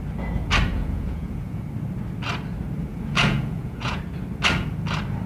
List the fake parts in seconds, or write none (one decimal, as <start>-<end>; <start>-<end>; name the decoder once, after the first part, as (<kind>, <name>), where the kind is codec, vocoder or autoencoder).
0.7-1.6 (vocoder, Vocos); 2.9-4.0